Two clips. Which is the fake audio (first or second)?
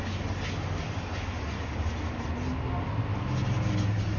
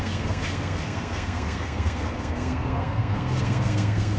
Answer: second